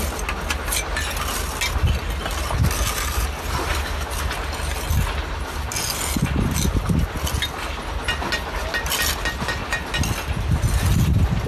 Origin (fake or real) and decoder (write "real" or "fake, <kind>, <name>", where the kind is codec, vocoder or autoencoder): real